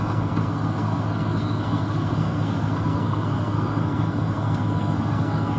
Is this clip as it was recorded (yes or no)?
no